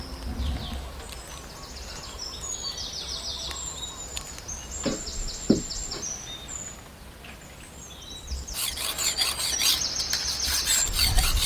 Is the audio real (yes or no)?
yes